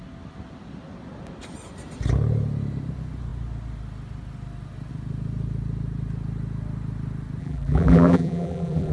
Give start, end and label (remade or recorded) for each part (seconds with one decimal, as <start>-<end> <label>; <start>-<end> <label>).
0.0-7.4 recorded; 7.4-8.9 remade